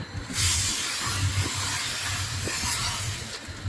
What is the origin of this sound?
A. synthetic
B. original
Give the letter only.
B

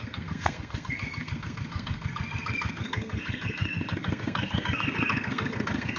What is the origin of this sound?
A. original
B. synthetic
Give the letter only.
B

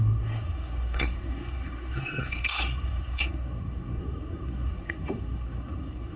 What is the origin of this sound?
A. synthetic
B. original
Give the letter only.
A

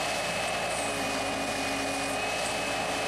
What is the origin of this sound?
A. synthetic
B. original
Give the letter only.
B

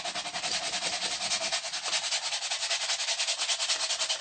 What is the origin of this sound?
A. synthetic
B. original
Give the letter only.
B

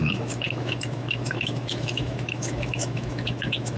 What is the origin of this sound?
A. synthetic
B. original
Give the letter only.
A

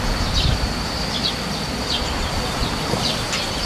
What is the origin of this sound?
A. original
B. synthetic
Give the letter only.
A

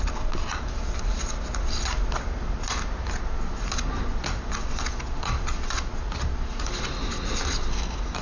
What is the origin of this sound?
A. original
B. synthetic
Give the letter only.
A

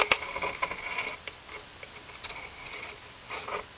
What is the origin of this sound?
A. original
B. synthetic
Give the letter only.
A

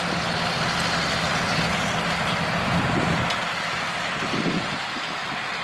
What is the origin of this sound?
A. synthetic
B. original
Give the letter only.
B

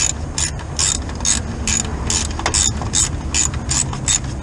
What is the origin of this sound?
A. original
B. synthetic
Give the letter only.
A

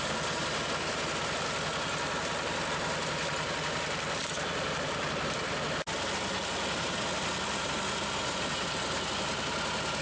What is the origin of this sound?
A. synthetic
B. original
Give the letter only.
B